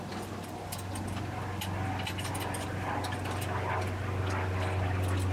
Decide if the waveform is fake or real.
real